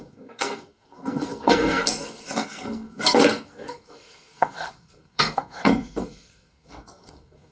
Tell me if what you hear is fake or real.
fake